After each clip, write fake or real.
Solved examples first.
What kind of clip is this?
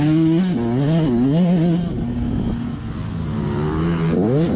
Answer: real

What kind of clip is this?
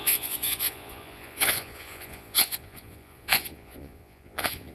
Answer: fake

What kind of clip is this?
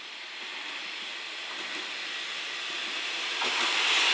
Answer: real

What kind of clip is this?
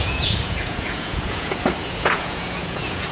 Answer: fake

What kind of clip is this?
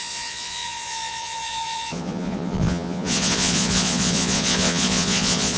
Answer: fake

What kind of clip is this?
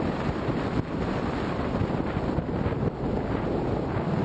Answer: real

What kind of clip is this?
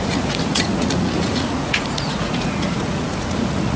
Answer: fake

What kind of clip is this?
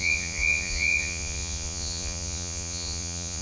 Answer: fake